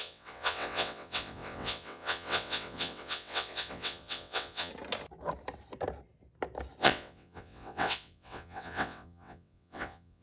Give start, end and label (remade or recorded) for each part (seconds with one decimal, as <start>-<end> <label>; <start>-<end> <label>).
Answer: 0.0-4.7 remade; 4.7-6.8 recorded; 6.8-10.2 remade